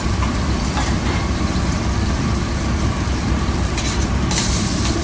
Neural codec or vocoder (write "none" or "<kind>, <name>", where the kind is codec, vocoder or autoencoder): vocoder, BigVGAN v2